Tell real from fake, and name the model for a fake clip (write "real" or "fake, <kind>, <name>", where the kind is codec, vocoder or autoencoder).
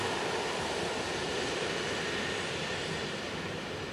real